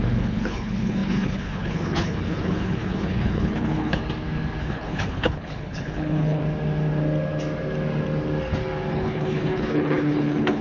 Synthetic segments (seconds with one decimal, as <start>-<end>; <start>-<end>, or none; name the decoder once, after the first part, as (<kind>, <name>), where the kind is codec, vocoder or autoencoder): 0.0-4.0 (codec, HILCodec); 4.6-6.4; 8.9-10.6